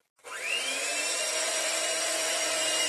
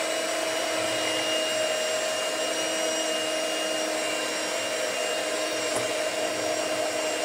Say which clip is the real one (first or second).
second